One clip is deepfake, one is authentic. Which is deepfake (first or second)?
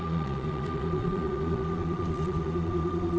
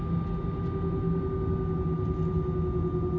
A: first